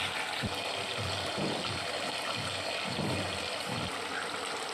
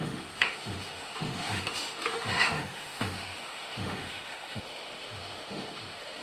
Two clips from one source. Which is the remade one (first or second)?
second